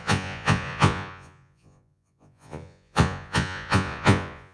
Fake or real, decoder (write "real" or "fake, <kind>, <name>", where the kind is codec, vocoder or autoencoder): fake, vocoder, Vocos